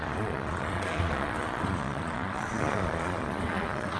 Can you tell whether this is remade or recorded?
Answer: remade